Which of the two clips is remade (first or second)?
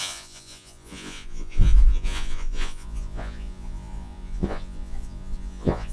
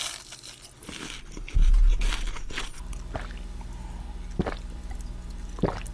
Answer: first